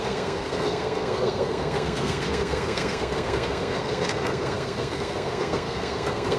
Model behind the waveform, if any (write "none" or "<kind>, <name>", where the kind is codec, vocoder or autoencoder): codec, SNAC